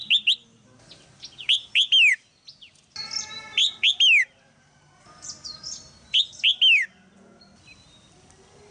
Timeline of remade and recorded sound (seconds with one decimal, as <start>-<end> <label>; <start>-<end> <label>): 0.0-8.7 recorded